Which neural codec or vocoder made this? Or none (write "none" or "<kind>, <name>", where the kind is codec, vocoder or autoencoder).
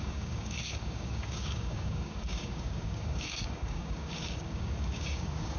codec, DAC